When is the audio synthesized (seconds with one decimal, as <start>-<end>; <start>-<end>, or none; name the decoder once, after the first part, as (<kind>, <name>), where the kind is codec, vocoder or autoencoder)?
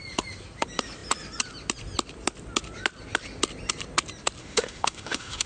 4.4-5.5 (autoencoder, DAC-VAE)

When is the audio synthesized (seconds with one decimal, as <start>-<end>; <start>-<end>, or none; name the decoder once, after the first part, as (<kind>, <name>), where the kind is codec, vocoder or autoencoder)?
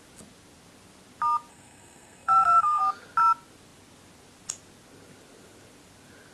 1.5-2.8 (codec, SNAC)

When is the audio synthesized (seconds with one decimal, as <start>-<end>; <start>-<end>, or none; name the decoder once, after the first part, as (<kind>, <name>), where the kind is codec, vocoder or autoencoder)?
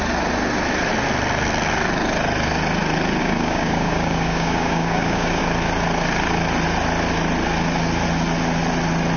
3.2-5.4 (codec, DAC)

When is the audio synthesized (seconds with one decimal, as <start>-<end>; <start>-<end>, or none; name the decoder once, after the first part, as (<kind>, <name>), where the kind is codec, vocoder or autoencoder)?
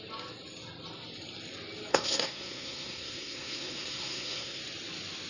1.9-4.6 (codec, SNAC)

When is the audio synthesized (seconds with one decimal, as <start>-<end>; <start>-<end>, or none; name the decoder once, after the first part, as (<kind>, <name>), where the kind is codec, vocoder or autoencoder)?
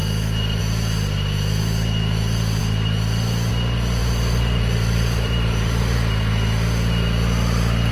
4.0-6.1 (vocoder, BigVGAN v2)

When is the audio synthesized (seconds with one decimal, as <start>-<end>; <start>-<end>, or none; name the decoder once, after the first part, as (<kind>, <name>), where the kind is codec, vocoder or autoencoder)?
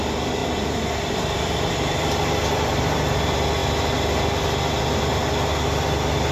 0.4-3.2 (vocoder, BigVGAN v2)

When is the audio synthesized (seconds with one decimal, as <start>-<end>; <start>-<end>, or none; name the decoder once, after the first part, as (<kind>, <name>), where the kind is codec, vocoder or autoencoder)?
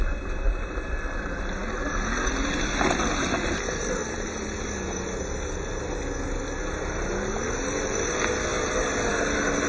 none